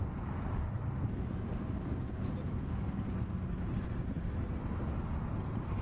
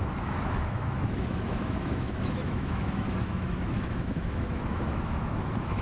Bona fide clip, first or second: first